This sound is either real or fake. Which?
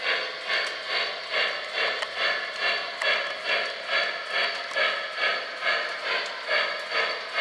real